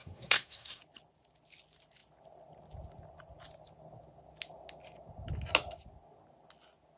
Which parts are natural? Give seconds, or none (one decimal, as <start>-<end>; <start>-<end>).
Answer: 0.8-7.0